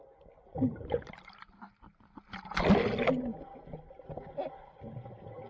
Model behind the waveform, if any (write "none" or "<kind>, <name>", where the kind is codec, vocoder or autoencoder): none